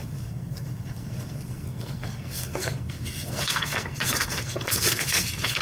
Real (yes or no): no